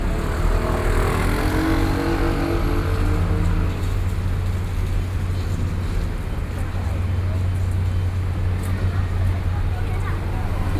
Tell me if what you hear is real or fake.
real